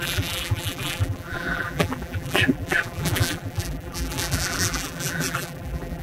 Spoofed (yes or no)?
yes